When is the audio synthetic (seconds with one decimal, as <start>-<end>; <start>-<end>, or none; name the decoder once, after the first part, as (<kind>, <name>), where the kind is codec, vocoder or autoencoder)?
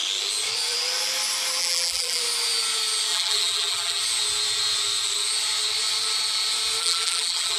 1.6-2.2 (vocoder, BigVGAN v2); 3.1-4.0; 6.8-7.6